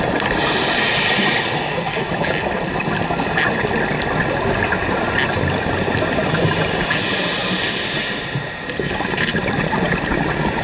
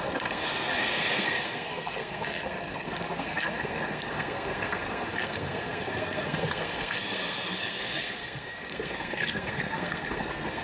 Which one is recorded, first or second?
first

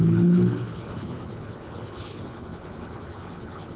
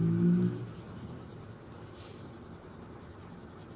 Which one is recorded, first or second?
second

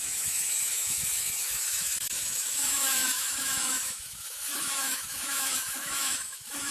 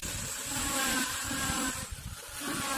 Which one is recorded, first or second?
second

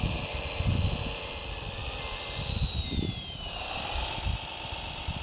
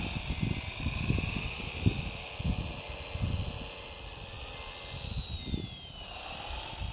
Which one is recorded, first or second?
second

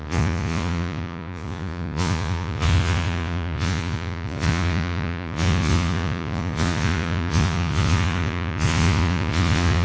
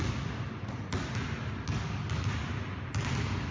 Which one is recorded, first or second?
second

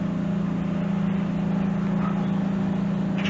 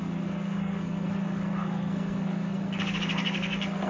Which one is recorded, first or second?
first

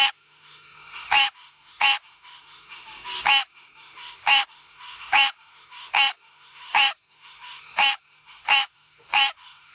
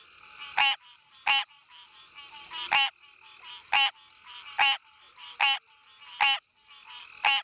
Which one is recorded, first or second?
second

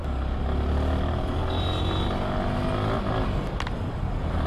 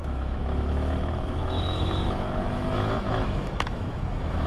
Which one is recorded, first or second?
first